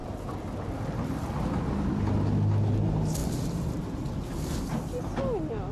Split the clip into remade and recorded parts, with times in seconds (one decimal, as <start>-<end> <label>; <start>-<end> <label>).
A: 0.0-5.7 recorded